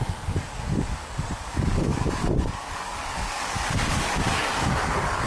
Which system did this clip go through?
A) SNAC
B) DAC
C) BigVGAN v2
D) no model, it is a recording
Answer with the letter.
B